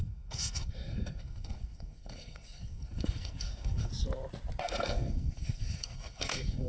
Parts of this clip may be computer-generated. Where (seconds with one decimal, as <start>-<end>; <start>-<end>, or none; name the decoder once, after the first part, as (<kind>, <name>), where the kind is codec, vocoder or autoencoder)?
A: 0.0-3.9 (codec, SNAC); 4.6-6.7